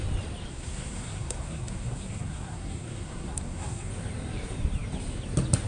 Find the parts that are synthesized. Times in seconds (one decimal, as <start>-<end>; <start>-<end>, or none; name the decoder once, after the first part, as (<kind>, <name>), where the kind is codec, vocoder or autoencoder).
0.5-3.9 (codec, SNAC)